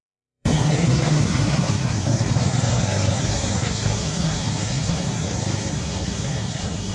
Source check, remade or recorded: remade